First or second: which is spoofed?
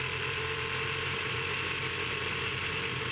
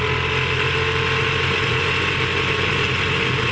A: first